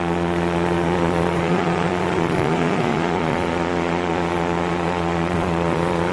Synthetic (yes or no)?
yes